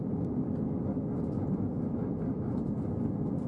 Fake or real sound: real